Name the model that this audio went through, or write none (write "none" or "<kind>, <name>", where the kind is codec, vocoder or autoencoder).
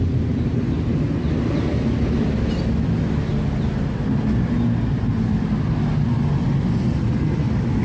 none